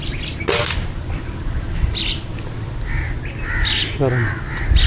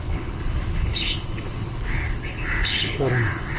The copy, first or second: second